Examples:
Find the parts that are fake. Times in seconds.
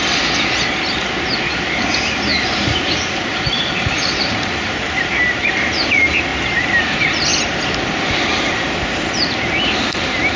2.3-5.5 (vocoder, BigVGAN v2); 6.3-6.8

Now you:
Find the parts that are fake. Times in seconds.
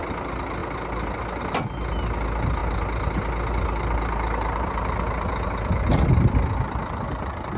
none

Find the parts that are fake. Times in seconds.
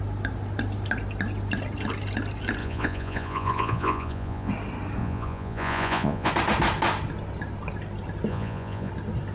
2.6-4.5 (vocoder, Vocos); 5.0-6.3; 8.3-8.9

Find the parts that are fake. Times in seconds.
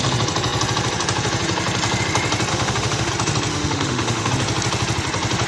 2.5-3.1 (autoencoder, DAC-VAE); 3.5-4.3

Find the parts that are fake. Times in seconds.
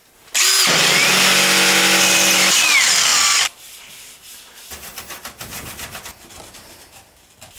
none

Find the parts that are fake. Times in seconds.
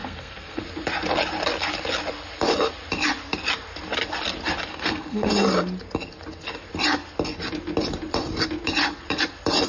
0.0-0.6 (codec, SNAC); 4.7-5.3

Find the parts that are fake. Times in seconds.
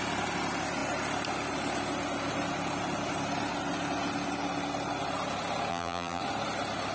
5.7-6.2 (vocoder, BigVGAN v2)